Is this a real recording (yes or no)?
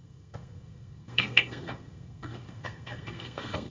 no